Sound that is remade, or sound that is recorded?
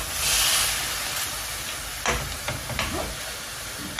recorded